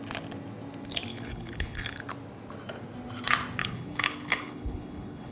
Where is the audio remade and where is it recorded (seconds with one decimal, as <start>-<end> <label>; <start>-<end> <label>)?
0.0-1.1 recorded; 1.1-2.0 remade; 2.0-3.6 recorded; 3.6-5.3 remade

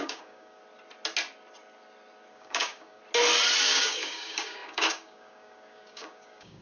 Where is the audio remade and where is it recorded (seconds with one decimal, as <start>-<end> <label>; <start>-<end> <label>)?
0.0-0.6 remade; 0.6-2.3 recorded; 2.3-3.0 remade; 3.0-3.6 recorded; 3.6-6.6 remade

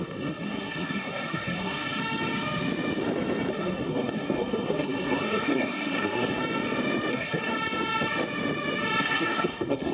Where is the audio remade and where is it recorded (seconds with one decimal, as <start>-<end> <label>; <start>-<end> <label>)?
0.0-2.0 remade; 2.0-3.5 recorded; 3.5-6.4 remade; 6.4-7.1 recorded; 7.1-7.5 remade; 7.5-9.0 recorded; 9.0-9.9 remade

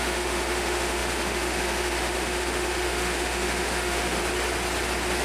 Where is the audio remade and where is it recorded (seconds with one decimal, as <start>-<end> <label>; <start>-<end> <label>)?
0.0-4.2 remade; 4.2-5.2 recorded

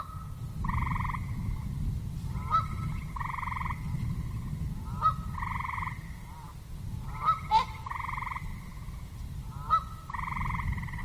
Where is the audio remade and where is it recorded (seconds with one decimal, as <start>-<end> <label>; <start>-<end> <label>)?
0.0-11.0 recorded

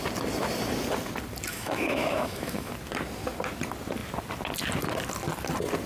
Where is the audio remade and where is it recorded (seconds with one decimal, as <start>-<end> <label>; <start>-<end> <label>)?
0.0-1.5 recorded; 1.5-2.7 remade; 2.7-5.9 recorded

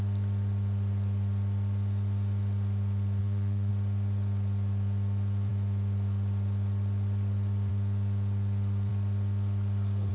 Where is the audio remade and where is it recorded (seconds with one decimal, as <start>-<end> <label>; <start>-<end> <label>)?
0.0-3.2 recorded; 3.2-3.7 remade; 3.7-10.1 recorded